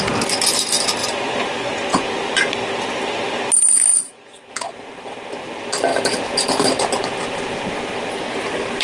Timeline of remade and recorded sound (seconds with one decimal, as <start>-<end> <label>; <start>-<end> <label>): 0.0-1.0 recorded; 1.0-1.7 remade; 1.7-8.8 recorded